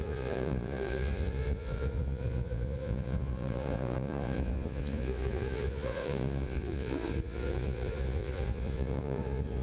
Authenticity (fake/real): fake